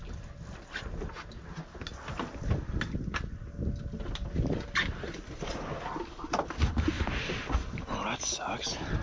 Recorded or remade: recorded